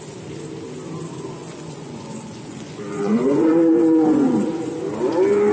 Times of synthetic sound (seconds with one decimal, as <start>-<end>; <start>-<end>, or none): 1.4-4.7